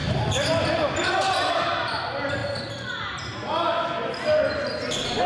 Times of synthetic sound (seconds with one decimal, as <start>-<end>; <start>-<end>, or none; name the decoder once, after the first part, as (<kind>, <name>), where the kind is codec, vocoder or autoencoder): none